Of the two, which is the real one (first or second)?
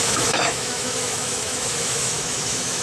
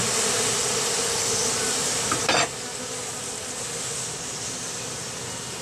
second